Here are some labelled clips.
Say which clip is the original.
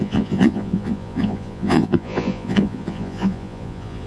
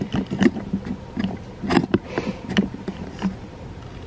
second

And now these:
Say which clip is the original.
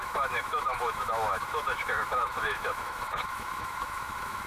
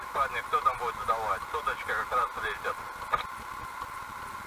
second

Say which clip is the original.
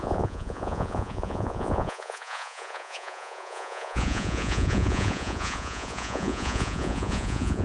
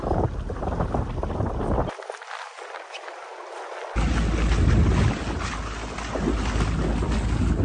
second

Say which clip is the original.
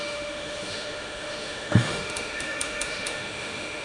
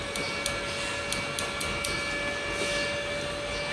second